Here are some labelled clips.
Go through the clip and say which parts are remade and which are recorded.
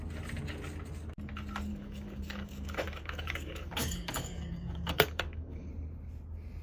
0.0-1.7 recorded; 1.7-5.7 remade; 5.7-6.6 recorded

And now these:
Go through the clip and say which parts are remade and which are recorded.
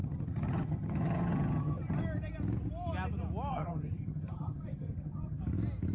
0.0-2.0 remade; 2.0-3.5 recorded; 3.5-5.4 remade; 5.4-5.9 recorded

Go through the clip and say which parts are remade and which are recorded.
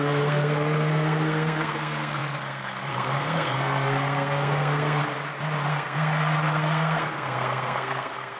0.0-5.0 remade; 5.0-5.7 recorded; 5.7-8.4 remade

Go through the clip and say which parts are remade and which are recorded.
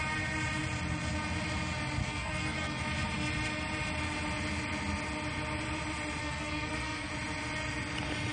0.0-2.0 recorded; 2.0-2.8 remade; 2.8-6.2 recorded; 6.2-7.1 remade; 7.1-8.3 recorded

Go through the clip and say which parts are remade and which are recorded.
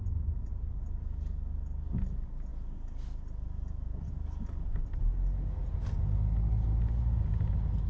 0.0-7.9 recorded